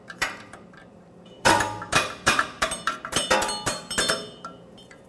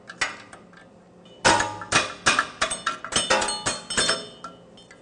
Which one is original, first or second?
second